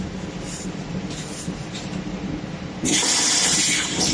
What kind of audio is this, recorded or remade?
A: remade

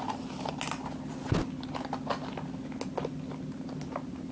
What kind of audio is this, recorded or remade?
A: recorded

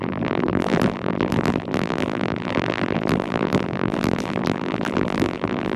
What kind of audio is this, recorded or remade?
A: remade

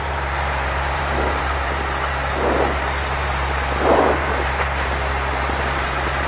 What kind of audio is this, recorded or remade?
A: remade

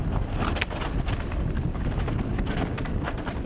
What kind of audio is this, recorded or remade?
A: recorded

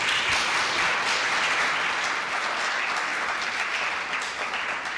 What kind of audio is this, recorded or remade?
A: recorded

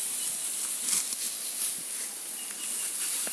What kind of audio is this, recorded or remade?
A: recorded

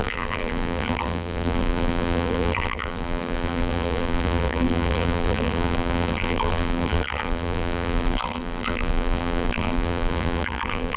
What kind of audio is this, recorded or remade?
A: remade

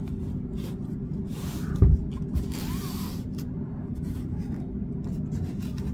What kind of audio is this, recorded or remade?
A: recorded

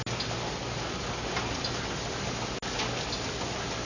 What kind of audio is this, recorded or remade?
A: recorded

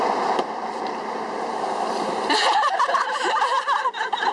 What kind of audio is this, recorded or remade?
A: remade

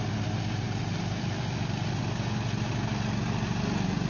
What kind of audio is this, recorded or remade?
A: recorded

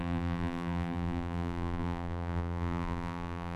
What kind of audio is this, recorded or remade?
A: remade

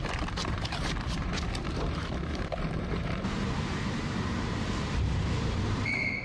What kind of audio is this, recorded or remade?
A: remade